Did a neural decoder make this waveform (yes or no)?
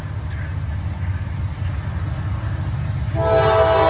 no